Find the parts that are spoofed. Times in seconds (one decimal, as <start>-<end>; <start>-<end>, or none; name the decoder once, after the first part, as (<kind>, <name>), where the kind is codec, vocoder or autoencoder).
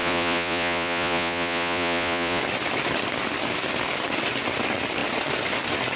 0.0-2.4 (vocoder, Vocos)